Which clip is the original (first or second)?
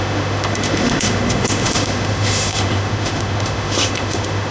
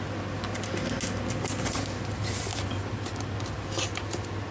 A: second